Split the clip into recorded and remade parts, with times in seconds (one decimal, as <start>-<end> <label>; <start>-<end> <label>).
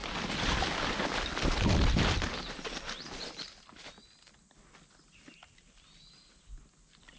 0.0-2.5 remade; 2.5-7.2 recorded